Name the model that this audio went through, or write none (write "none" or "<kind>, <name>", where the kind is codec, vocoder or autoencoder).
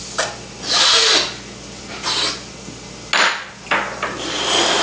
none